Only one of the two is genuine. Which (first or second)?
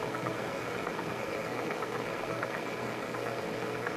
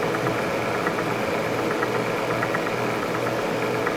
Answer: second